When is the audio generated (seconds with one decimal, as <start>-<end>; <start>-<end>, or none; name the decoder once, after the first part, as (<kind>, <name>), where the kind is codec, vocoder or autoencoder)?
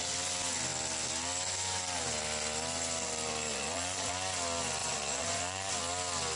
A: 3.5-4.1 (vocoder, Vocos); 4.8-5.7